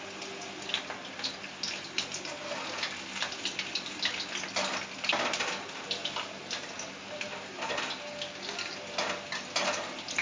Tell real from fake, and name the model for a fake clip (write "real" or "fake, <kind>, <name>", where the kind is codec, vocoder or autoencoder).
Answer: real